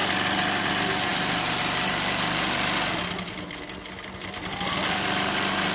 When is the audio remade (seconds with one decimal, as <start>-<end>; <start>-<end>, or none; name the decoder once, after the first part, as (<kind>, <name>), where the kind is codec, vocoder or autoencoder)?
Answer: none